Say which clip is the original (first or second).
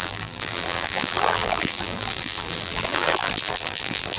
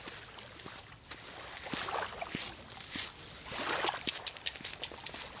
second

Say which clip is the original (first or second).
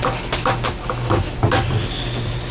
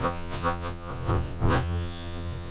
first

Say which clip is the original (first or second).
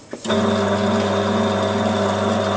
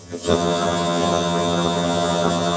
first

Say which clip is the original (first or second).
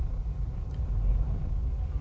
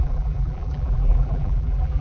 first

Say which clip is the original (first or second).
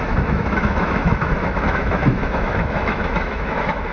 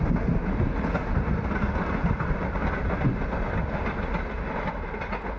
second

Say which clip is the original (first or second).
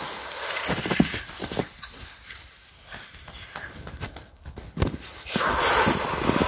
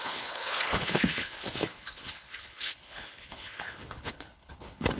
first